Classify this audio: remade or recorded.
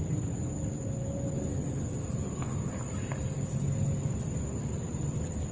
recorded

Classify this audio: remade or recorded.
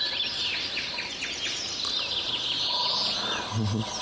recorded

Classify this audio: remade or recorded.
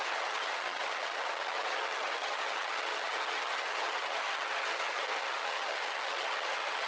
remade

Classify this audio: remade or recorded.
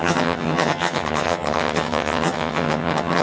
remade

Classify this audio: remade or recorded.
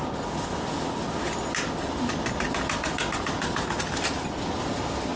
recorded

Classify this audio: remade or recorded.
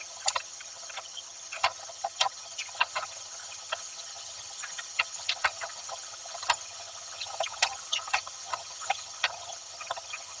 remade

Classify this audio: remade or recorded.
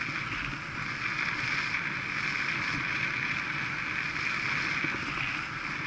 recorded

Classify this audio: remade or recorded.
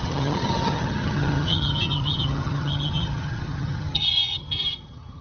remade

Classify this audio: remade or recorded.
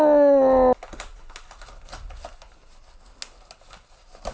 recorded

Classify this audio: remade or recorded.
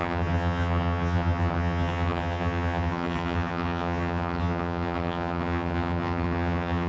remade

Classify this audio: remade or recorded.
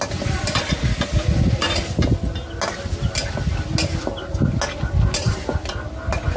recorded